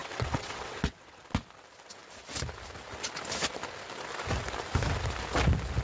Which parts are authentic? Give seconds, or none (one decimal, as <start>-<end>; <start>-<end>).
1.2-5.8